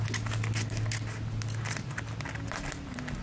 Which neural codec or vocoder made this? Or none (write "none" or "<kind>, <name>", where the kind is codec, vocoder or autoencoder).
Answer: none